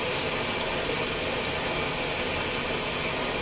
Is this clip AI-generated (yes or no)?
no